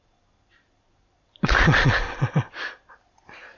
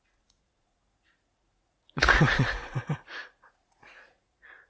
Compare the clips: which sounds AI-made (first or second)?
second